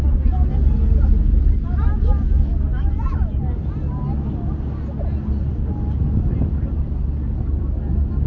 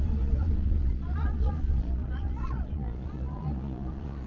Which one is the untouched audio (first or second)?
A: first